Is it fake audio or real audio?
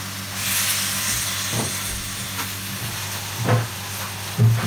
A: real